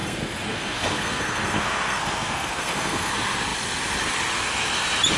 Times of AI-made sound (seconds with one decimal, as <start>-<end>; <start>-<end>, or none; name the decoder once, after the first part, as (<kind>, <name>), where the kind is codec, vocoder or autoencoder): 0.0-3.1 (codec, SNAC)